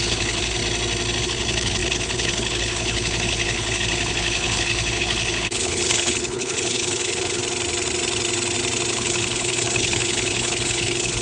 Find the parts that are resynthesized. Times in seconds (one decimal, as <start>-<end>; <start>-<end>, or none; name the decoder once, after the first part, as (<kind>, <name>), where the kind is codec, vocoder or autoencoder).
0.0-0.6 (codec, HILCodec); 1.2-7.4; 8.9-11.2